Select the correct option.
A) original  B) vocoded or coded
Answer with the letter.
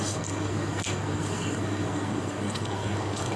B